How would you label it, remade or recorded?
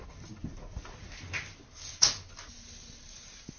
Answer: recorded